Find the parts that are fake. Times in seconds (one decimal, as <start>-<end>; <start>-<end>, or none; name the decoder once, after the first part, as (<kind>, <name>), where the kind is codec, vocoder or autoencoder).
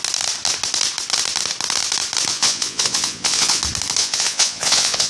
2.3-3.6 (vocoder, Vocos); 4.0-5.1